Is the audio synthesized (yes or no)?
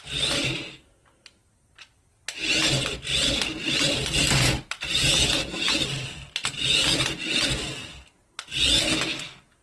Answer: no